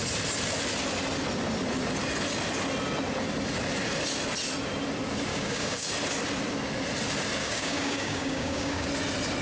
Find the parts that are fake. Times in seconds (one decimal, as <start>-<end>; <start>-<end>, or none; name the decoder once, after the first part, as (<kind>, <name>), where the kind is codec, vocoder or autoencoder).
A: 5.3-5.9 (codec, DAC); 7.4-8.9